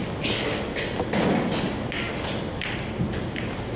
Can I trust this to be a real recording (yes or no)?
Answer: yes